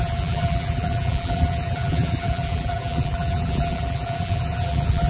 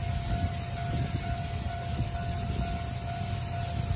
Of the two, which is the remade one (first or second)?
first